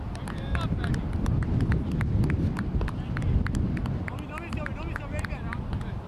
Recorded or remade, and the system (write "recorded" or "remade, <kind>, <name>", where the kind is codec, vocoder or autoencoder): recorded